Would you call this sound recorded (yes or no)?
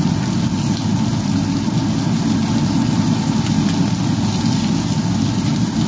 yes